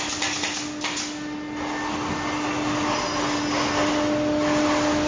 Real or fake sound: real